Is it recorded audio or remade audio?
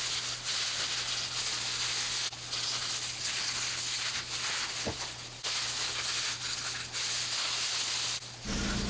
recorded